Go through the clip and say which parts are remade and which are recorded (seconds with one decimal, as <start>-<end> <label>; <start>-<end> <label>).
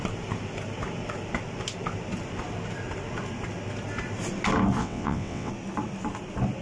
0.0-4.8 recorded; 4.8-5.5 remade; 5.5-6.6 recorded